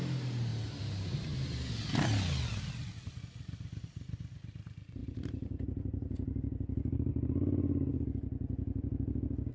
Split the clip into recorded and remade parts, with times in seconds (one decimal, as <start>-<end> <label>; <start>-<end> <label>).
0.0-0.5 recorded; 0.5-1.7 remade; 1.7-5.0 recorded; 5.0-7.1 remade; 7.1-9.5 recorded